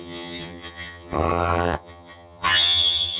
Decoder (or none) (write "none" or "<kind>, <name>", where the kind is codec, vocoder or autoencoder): vocoder, HiFi-GAN